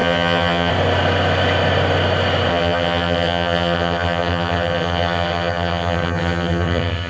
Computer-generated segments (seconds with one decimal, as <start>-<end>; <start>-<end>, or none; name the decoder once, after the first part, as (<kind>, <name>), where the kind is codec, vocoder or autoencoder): 0.0-0.7 (vocoder, HiFi-GAN); 2.5-7.1

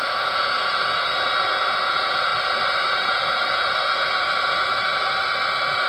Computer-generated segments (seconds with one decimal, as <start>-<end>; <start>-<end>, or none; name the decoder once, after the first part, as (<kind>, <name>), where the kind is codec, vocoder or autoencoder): 0.0-1.1 (vocoder, Vocos); 1.8-2.3; 2.9-4.9

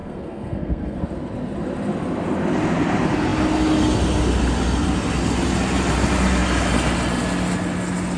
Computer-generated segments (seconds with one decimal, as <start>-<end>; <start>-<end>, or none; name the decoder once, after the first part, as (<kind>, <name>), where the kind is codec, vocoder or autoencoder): 0.0-1.0 (codec, SNAC)

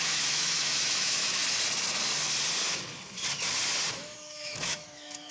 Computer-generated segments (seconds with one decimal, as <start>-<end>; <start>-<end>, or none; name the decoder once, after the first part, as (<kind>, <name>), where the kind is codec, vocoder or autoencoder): 0.0-1.4 (autoencoder, DAC-VAE); 3.9-5.3

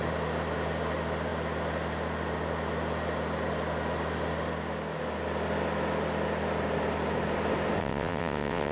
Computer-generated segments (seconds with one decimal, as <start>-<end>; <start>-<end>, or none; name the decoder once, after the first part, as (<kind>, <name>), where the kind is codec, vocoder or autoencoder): 7.8-8.7 (vocoder, WaveNeXt)

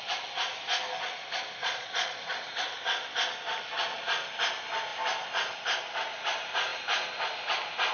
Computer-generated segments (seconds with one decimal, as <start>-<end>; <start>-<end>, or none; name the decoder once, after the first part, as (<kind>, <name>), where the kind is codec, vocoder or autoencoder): 1.6-2.5 (vocoder, Vocos)